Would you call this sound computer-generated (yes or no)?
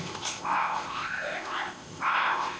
yes